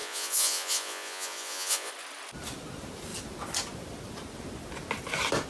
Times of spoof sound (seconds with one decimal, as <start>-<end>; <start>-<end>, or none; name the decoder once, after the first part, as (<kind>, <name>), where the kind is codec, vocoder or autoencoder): 0.0-1.9 (vocoder, Vocos)